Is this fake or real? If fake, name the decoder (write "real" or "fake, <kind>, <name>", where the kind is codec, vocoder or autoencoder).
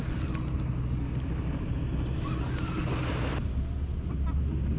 real